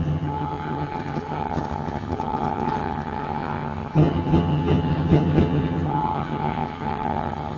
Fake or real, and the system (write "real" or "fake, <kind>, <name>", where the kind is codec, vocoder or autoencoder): fake, vocoder, HiFi-GAN